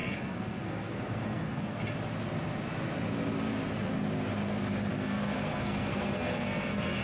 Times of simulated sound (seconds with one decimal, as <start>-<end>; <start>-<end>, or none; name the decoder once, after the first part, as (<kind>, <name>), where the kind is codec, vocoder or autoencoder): 0.0-1.8 (codec, SNAC); 4.9-7.0

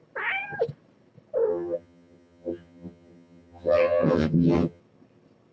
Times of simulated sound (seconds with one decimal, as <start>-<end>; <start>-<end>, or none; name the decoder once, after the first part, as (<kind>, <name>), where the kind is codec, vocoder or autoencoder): 1.5-4.8 (vocoder, HiFi-GAN)

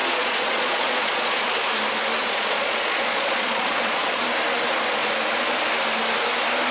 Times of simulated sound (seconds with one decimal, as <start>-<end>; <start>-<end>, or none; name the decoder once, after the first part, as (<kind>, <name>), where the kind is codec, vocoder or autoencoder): 0.0-1.5 (vocoder, Vocos); 2.2-4.2